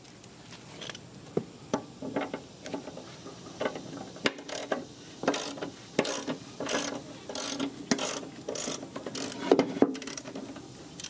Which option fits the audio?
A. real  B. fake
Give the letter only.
A